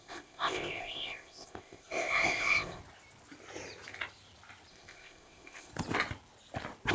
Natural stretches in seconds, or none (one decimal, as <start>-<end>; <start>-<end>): 2.8-4.7; 5.7-6.9